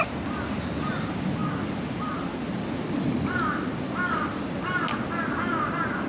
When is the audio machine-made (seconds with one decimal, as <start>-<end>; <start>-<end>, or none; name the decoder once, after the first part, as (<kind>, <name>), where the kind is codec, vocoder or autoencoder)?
none